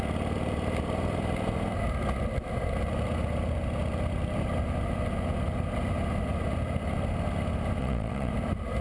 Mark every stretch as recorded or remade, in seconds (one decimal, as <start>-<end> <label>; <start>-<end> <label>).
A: 0.0-7.8 recorded; 7.8-8.3 remade; 8.3-8.8 recorded